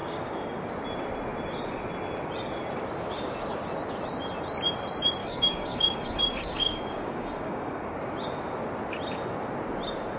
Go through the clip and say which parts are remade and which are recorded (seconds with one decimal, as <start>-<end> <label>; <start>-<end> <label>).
0.0-0.7 remade; 0.7-5.2 recorded; 5.2-8.0 remade; 8.0-10.2 recorded